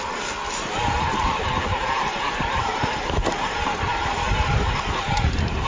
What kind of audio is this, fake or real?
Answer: fake